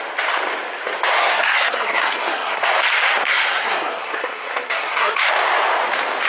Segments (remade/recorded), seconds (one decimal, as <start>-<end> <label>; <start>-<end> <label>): 0.0-1.2 recorded; 1.2-2.7 remade; 2.7-3.3 recorded; 3.3-5.3 remade; 5.3-6.3 recorded